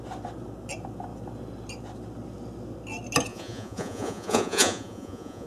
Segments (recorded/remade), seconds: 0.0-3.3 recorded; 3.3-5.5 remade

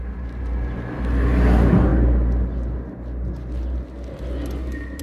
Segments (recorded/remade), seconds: 0.0-5.0 recorded

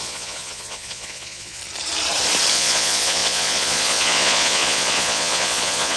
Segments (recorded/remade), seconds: 0.0-1.6 remade; 1.6-2.5 recorded; 2.5-6.0 remade

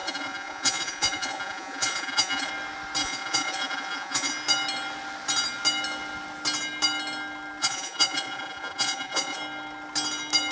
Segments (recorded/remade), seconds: 0.0-2.5 remade; 2.5-3.0 recorded; 3.0-4.3 remade; 4.3-7.6 recorded; 7.6-9.4 remade; 9.4-10.5 recorded

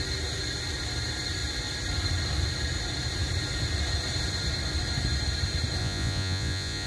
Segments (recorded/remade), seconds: 0.0-5.8 recorded; 5.8-6.9 remade

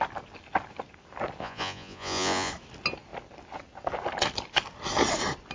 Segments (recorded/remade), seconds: 0.0-1.4 recorded; 1.4-2.5 remade; 2.5-5.5 recorded

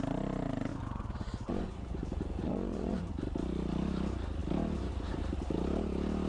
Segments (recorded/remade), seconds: 0.0-0.7 recorded; 0.7-3.1 remade; 3.1-6.3 recorded